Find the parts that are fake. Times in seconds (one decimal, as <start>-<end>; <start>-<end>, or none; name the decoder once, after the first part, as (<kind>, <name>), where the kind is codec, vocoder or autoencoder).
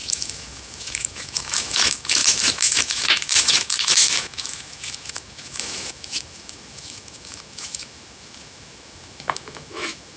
0.0-10.2 (autoencoder, DAC-VAE)